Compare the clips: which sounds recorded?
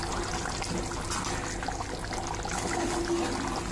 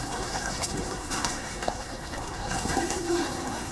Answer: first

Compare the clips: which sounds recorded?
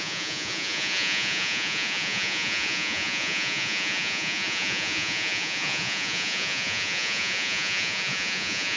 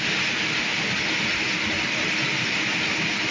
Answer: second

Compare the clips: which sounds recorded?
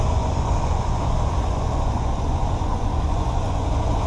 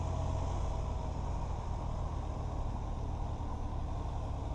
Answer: second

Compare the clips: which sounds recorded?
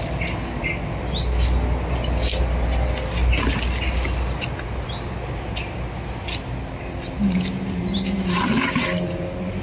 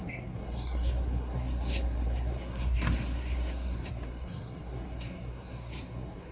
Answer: first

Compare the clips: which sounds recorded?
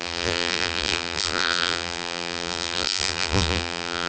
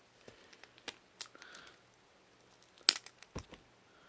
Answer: second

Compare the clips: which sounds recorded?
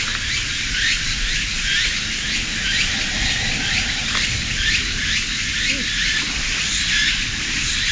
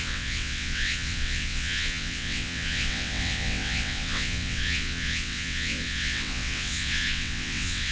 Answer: first